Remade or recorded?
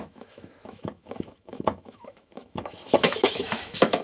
remade